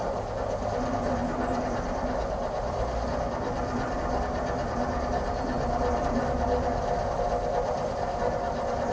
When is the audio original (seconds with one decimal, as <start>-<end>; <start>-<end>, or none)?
0.0-8.9

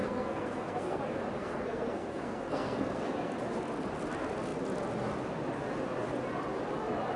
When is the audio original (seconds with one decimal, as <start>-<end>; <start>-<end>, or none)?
1.0-1.4; 3.4-7.2